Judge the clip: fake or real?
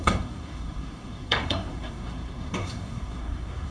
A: fake